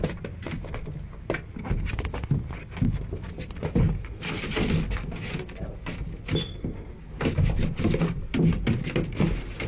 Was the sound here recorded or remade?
recorded